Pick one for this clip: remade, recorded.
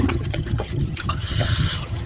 remade